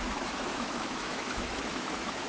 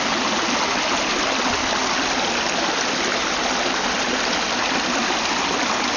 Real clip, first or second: second